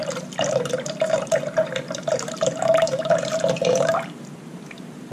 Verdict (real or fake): fake